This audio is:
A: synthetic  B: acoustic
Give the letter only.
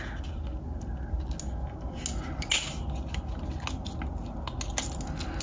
B